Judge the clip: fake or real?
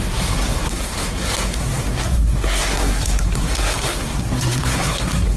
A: fake